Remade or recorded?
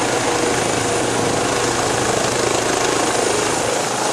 recorded